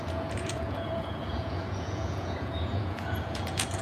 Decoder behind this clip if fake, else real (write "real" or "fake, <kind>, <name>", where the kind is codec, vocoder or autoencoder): fake, vocoder, Vocos